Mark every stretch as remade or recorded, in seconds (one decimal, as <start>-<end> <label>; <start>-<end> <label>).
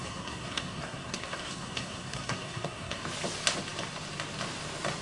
0.0-3.0 remade; 3.0-5.0 recorded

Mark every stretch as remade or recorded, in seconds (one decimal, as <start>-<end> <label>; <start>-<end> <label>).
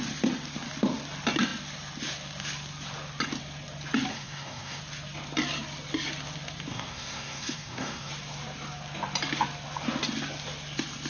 0.0-4.1 recorded; 4.1-4.8 remade; 4.8-6.7 recorded; 6.7-8.1 remade; 8.1-11.1 recorded